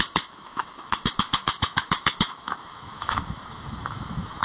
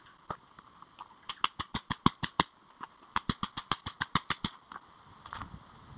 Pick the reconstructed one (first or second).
first